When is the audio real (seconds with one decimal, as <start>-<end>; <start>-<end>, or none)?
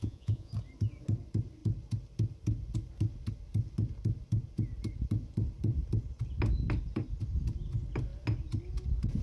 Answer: 0.5-9.2